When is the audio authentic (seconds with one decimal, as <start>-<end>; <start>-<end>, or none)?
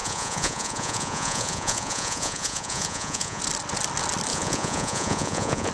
3.4-4.3